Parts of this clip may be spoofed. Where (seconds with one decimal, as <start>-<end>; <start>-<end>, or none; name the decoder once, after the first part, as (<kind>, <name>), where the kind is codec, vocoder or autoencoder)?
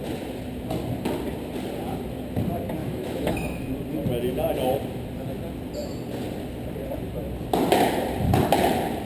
2.8-3.6 (autoencoder, DAC-VAE)